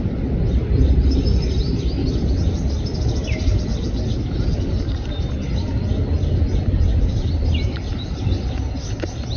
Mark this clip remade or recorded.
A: recorded